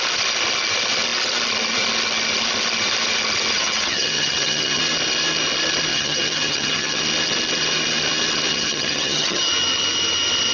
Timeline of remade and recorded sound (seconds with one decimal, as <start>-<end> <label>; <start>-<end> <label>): 0.0-3.5 recorded; 3.5-4.8 remade; 4.8-5.9 recorded; 5.9-7.0 remade; 7.0-8.5 recorded; 8.5-9.5 remade; 9.5-10.5 recorded

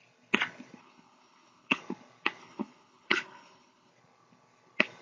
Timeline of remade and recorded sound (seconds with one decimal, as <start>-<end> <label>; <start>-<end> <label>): 0.0-0.8 recorded; 0.8-1.8 remade; 1.8-2.4 recorded; 2.4-3.9 remade; 3.9-5.0 recorded

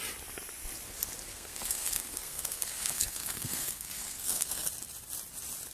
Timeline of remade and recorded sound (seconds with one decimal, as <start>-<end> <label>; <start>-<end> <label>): 0.0-1.3 recorded; 1.3-4.7 remade; 4.7-5.7 recorded

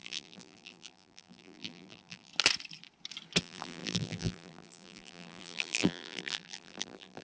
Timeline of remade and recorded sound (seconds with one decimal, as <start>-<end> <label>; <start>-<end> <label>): 0.0-2.3 remade; 2.3-3.4 recorded; 3.4-7.2 remade

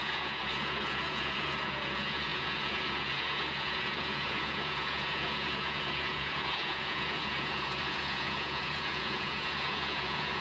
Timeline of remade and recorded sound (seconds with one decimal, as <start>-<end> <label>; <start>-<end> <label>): 0.0-10.4 remade